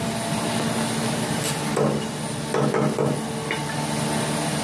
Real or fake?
real